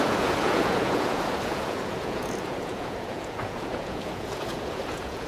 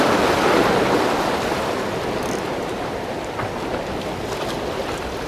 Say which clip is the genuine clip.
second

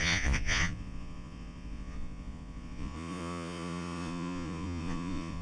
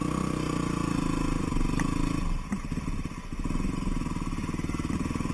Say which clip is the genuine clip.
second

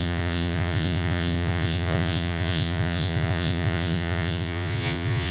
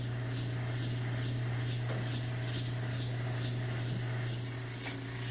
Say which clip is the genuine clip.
second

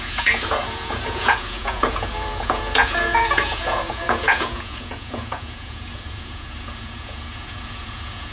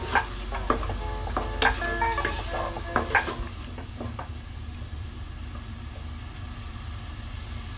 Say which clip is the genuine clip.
second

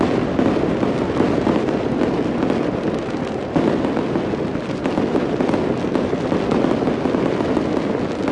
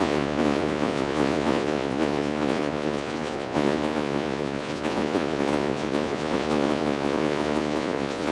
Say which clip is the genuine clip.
first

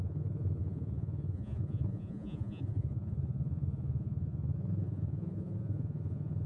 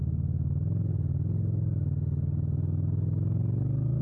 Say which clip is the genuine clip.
second